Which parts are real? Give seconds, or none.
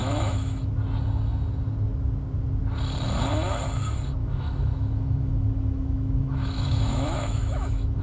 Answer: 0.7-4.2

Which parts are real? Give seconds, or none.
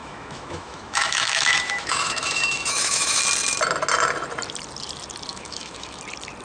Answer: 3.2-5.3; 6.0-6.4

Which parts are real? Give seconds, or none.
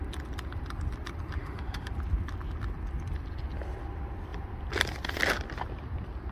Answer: 0.0-1.4; 1.9-6.3